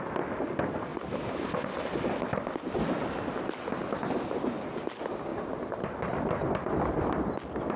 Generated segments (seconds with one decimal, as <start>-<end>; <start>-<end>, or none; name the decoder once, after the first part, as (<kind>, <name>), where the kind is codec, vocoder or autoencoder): 0.9-1.7 (vocoder, BigVGAN v2); 5.3-6.3